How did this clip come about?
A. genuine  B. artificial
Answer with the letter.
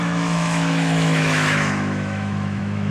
B